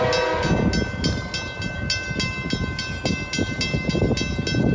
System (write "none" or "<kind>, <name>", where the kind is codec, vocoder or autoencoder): none